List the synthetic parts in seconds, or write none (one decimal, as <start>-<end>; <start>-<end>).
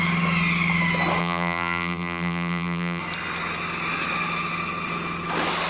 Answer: 1.2-3.0